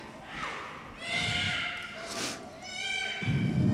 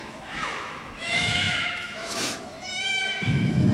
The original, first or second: first